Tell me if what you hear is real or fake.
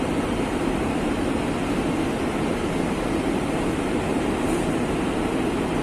fake